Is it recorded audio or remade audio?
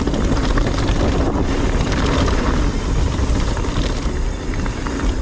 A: recorded